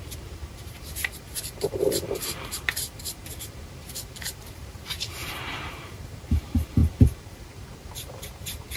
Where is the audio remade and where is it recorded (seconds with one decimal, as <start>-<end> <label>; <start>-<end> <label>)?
0.0-8.8 remade